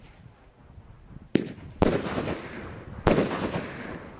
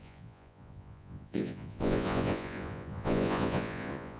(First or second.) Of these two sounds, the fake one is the second